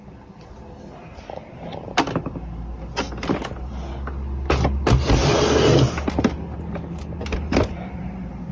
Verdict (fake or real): real